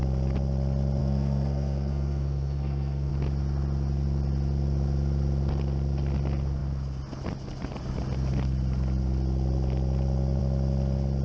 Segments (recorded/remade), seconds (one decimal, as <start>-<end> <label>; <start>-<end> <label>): 0.0-1.0 recorded; 1.0-3.1 remade; 3.1-11.2 recorded